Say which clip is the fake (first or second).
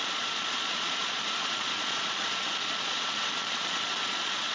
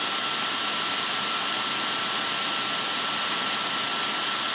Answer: first